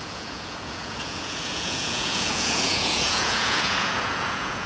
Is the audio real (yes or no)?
no